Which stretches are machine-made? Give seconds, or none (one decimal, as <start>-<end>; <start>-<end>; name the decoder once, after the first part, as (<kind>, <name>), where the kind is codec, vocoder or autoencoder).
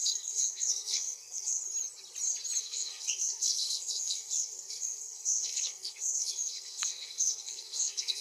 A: 0.0-1.6 (codec, SNAC); 2.6-8.2